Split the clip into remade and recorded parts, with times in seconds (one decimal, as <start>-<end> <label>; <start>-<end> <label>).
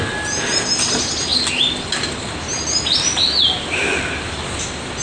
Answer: 0.0-5.0 recorded